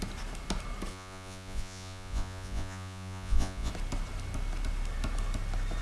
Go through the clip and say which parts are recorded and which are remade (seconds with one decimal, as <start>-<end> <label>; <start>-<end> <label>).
0.0-0.9 recorded; 0.9-3.7 remade; 3.7-5.8 recorded